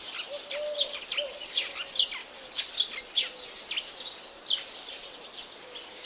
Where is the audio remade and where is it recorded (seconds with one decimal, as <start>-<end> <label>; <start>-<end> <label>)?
0.0-6.1 recorded